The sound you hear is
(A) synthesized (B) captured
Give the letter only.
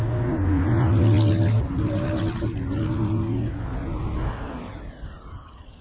B